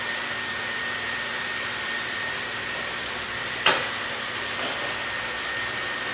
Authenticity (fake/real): fake